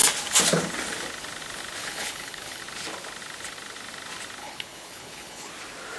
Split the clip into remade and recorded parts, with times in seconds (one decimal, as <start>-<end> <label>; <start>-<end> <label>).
0.0-1.8 recorded; 1.8-2.6 remade; 2.6-4.4 recorded; 4.4-5.5 remade; 5.5-6.0 recorded